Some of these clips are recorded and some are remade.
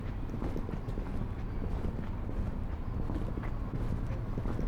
recorded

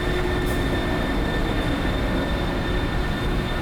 recorded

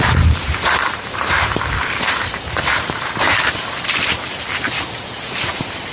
remade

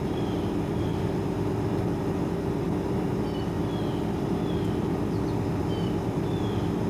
remade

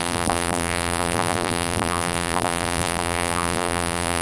remade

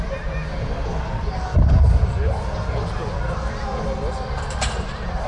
remade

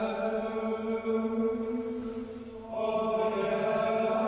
recorded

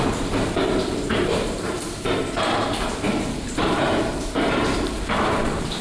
remade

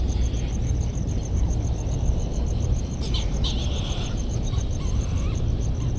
remade